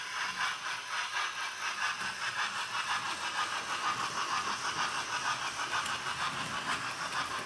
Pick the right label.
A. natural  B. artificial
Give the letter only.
A